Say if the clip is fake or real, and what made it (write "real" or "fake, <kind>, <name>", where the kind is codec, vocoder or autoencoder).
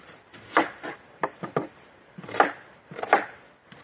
fake, vocoder, BigVGAN v2